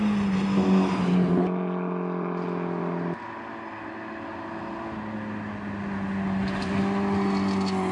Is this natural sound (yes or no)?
yes